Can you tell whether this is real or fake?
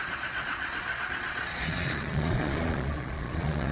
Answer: fake